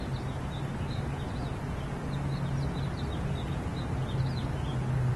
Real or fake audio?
real